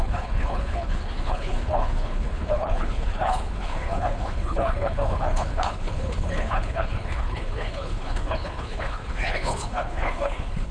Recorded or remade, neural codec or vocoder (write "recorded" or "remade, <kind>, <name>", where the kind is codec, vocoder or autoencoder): remade, codec, HILCodec